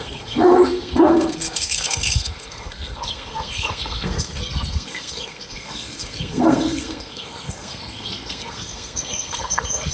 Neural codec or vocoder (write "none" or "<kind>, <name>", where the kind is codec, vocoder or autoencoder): codec, SNAC